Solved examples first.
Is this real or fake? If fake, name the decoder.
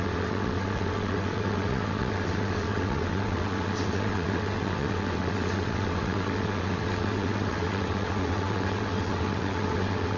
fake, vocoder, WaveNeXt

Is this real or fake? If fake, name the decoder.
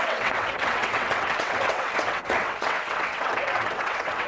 fake, vocoder, WaveNeXt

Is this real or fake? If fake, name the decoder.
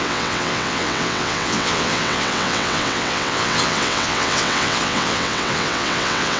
fake, vocoder, WaveNeXt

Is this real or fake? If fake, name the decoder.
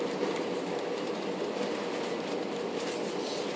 real